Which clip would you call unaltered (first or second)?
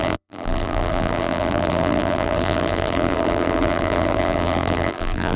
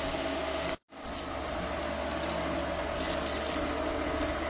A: second